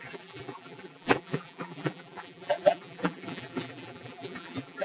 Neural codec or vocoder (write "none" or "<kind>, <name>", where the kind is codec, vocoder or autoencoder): vocoder, BigVGAN v2